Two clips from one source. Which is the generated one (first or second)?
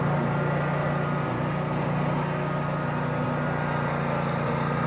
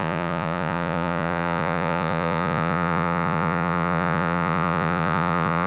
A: second